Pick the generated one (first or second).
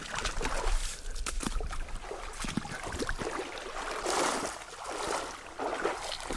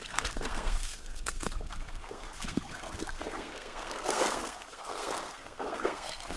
second